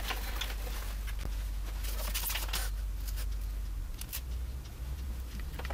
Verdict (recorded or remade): recorded